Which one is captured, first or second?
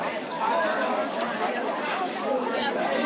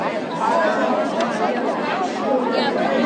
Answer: second